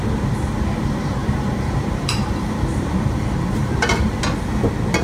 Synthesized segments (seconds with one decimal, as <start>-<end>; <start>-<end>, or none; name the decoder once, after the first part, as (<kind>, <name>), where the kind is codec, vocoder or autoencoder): 1.2-4.2 (vocoder, BigVGAN v2)